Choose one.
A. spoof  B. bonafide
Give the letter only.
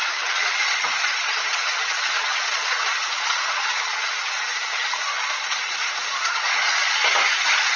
A